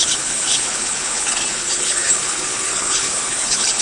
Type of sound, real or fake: fake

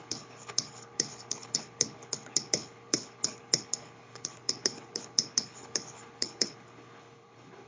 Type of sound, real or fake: fake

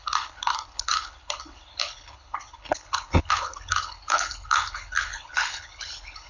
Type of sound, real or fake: fake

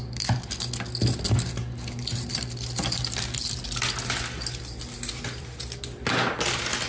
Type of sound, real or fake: real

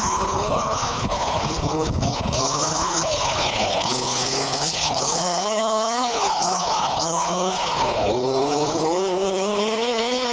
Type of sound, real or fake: fake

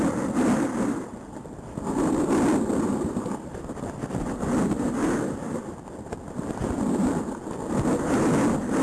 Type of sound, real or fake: real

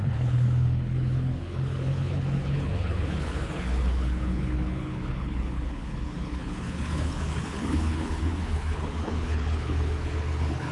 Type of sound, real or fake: fake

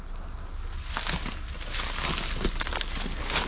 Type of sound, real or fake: real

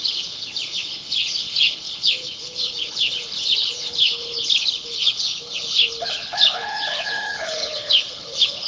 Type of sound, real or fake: fake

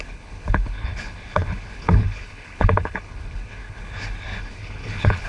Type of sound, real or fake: fake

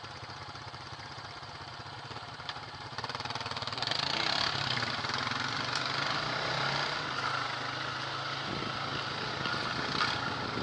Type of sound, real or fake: real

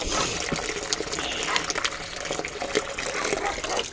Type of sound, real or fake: real